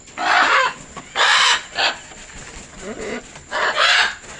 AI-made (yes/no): no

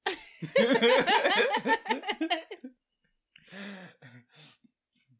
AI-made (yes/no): no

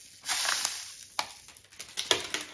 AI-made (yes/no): no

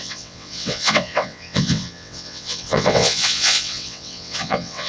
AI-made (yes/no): yes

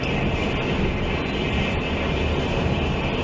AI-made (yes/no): no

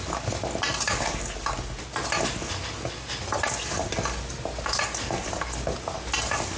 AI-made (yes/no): no